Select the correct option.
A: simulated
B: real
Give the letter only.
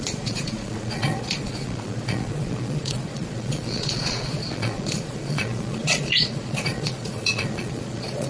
A